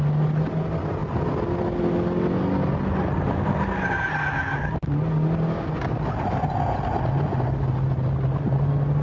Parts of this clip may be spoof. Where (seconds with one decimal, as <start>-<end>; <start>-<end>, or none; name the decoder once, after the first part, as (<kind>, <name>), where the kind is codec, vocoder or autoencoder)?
none